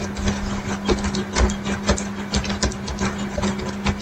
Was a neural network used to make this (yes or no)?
no